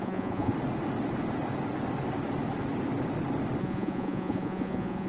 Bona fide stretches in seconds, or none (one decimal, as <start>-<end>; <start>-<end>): 0.5-3.6